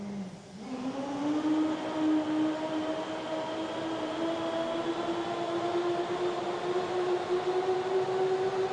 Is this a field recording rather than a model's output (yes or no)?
yes